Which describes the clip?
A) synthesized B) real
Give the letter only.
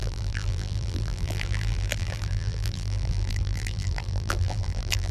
A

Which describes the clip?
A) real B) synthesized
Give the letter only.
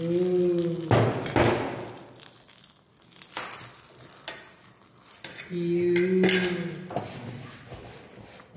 A